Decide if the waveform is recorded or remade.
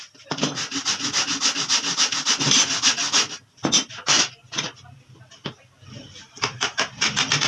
recorded